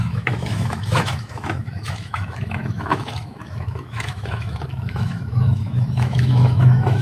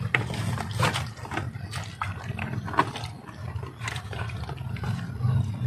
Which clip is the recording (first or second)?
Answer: second